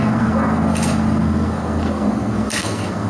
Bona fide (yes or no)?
no